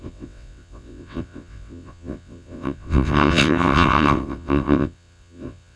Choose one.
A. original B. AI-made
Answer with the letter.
B